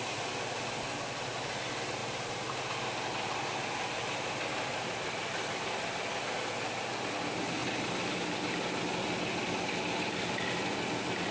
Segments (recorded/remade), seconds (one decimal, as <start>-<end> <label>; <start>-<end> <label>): 0.0-2.0 recorded; 2.0-2.6 remade; 2.6-11.3 recorded